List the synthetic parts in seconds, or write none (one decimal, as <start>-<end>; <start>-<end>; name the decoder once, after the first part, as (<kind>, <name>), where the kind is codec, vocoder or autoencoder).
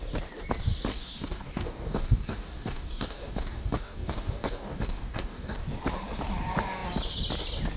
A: 0.9-5.6 (codec, DAC)